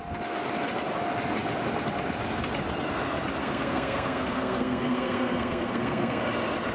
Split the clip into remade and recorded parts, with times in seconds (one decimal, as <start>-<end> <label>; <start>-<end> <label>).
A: 0.0-3.4 recorded; 3.4-6.2 remade; 6.2-6.7 recorded